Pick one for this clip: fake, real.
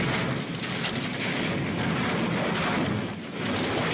real